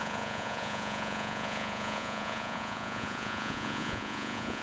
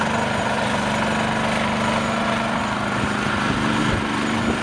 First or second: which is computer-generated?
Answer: first